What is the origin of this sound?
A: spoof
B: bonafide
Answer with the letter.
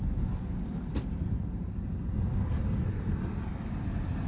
B